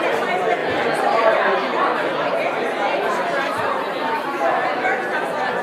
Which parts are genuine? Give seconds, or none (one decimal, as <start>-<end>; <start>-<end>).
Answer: 0.0-0.6; 4.0-5.6